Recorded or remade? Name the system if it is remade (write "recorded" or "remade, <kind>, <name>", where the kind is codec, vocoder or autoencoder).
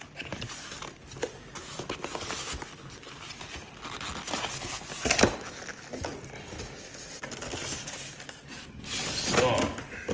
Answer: recorded